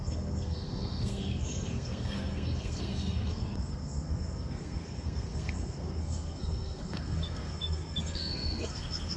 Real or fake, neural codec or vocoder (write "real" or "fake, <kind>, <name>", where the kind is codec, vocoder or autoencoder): fake, codec, SNAC